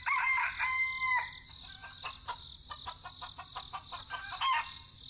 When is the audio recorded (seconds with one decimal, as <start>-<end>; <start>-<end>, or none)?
0.0-5.1